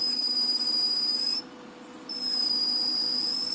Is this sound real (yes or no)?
yes